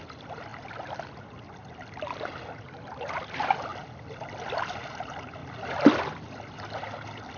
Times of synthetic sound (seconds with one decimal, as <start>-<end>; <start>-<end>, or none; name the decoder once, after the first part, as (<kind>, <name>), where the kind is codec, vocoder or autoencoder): 5.4-6.3 (vocoder, BigVGAN v2)